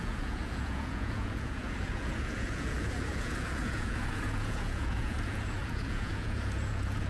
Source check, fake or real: fake